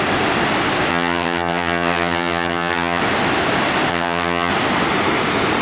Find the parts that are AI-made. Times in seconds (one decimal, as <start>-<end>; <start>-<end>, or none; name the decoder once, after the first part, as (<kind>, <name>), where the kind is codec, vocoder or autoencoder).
0.9-3.0 (vocoder, HiFi-GAN); 3.9-4.5